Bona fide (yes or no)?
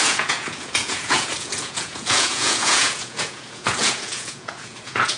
no